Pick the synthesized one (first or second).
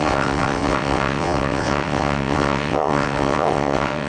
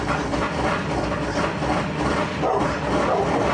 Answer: first